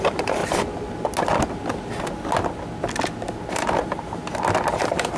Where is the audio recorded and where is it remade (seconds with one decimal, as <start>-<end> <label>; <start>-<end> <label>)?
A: 0.0-0.4 remade; 0.4-3.5 recorded; 3.5-4.2 remade; 4.2-4.8 recorded; 4.8-5.2 remade